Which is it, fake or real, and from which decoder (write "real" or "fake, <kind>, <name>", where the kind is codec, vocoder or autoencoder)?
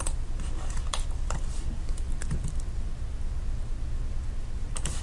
real